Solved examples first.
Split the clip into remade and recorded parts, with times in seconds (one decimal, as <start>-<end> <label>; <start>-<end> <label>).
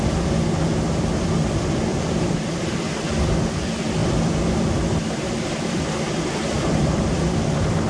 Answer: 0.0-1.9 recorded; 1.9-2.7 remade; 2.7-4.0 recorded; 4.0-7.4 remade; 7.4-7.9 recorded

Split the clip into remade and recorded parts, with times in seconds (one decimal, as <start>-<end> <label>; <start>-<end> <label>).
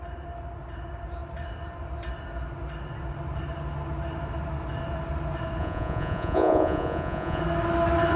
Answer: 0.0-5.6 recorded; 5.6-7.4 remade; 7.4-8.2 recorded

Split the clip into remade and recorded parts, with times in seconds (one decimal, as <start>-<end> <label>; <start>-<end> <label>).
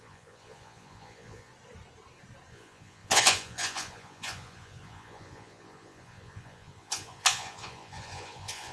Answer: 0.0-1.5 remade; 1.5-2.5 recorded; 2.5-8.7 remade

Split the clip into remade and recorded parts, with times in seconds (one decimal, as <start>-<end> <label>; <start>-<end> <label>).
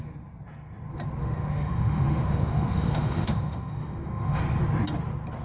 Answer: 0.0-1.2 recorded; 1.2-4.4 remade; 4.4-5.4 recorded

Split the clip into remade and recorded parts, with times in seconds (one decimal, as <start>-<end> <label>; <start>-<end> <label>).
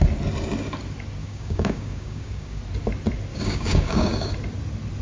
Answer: 0.0-1.2 recorded; 1.2-2.6 remade; 2.6-3.3 recorded; 3.3-4.3 remade; 4.3-5.0 recorded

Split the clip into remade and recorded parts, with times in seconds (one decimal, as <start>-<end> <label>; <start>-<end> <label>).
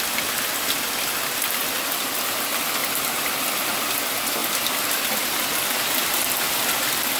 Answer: 0.0-2.8 recorded; 2.8-3.3 remade; 3.3-7.2 recorded